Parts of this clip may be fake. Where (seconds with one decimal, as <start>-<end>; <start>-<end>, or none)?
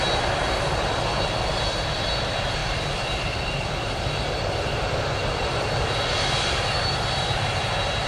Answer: 2.6-7.4